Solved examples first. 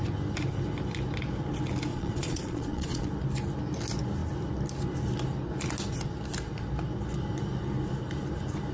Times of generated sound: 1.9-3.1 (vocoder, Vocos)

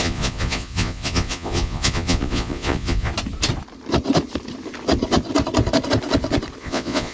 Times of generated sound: 0.0-3.1 (vocoder, Vocos); 6.6-7.1

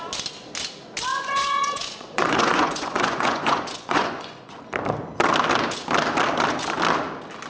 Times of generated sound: 1.1-4.6 (vocoder, Vocos)

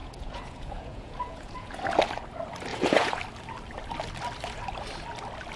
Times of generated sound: 0.0-1.8 (vocoder, Vocos); 2.7-3.2